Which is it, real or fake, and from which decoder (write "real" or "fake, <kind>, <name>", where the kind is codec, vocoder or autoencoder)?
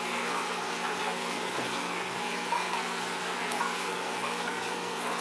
fake, codec, SNAC